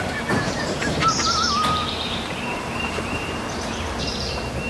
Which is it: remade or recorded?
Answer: remade